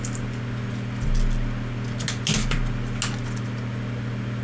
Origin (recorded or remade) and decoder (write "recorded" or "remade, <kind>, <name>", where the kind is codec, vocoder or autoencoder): recorded